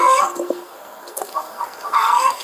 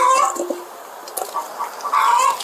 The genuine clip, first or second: second